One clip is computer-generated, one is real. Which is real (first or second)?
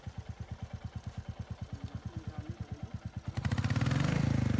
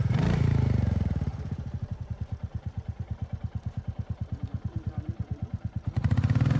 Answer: first